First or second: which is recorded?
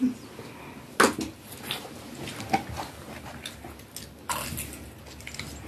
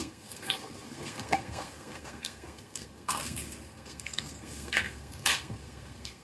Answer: first